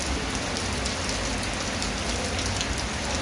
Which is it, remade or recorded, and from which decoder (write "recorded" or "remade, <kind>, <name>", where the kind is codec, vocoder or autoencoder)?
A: recorded